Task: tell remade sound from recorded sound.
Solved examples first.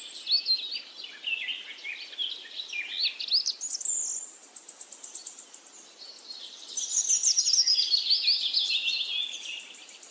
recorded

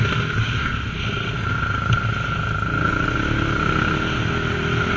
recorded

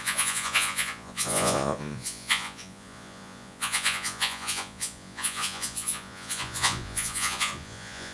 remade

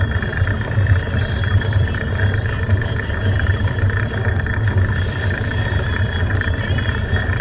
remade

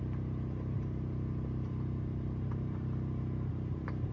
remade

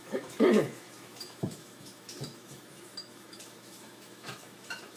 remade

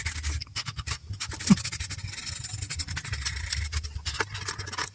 recorded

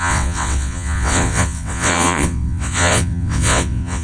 remade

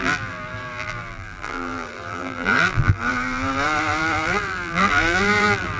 remade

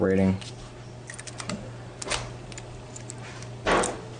recorded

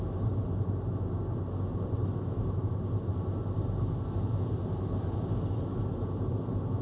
recorded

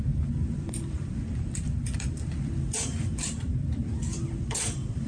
remade